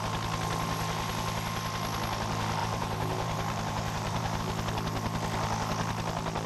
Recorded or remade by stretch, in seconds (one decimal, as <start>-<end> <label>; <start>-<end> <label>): 0.0-2.6 recorded; 2.6-4.4 remade; 4.4-6.5 recorded